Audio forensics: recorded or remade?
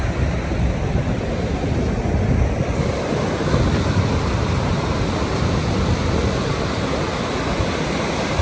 recorded